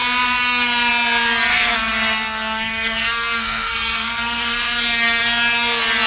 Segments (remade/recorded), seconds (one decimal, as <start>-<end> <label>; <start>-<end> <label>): 0.0-1.5 recorded; 1.5-5.2 remade; 5.2-6.1 recorded